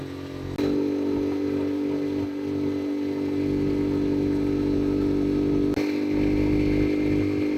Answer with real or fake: real